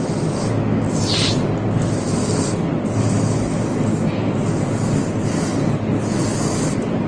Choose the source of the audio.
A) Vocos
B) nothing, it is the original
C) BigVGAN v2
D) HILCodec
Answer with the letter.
B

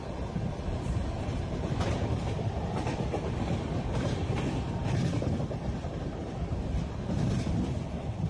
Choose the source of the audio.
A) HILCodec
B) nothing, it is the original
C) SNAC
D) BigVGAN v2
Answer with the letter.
D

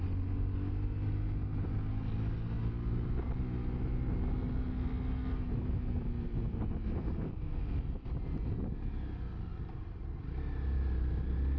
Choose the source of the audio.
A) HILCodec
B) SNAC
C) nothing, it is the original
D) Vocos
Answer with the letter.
C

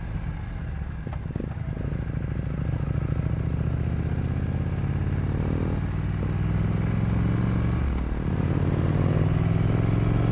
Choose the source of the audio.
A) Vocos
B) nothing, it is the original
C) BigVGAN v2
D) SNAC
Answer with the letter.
B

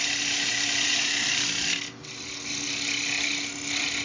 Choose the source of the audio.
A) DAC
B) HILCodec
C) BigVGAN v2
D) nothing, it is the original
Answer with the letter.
D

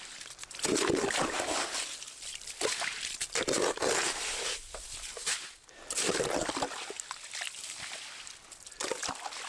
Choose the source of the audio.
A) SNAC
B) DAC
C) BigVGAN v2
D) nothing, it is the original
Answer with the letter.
D